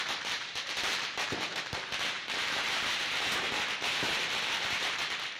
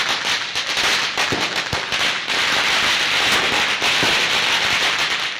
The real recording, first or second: second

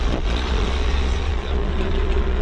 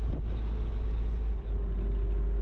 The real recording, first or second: second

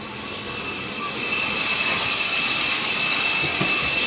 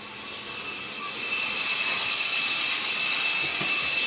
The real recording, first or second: second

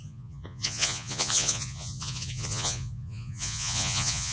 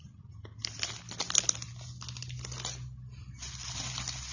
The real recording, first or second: second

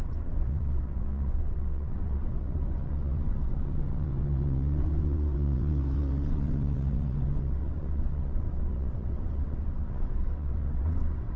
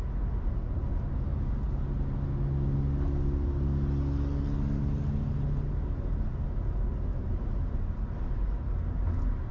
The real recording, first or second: second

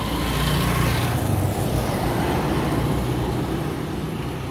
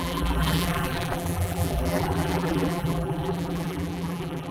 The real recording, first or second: first